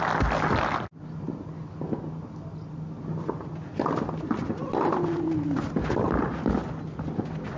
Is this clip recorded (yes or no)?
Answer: yes